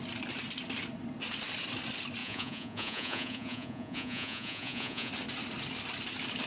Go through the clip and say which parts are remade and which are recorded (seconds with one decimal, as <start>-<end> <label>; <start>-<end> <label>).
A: 0.0-2.2 recorded; 2.2-5.1 remade; 5.1-6.5 recorded